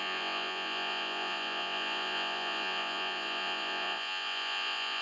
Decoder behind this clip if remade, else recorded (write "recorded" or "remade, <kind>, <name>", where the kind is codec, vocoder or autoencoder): remade, vocoder, Vocos